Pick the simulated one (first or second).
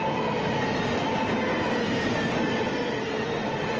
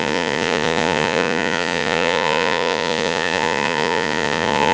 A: second